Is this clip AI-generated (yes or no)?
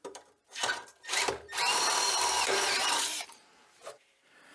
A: yes